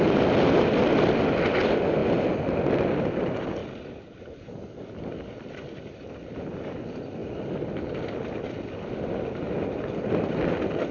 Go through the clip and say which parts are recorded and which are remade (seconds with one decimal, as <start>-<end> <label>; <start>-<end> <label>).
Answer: 0.0-10.9 recorded